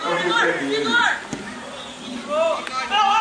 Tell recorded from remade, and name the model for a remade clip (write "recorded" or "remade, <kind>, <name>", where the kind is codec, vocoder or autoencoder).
recorded